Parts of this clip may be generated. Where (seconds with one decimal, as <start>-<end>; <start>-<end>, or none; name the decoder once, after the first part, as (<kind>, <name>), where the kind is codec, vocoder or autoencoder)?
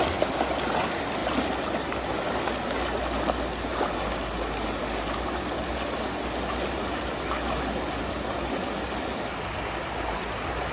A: none